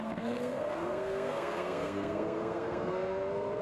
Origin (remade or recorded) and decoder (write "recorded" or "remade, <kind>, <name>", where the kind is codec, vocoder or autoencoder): remade, codec, SNAC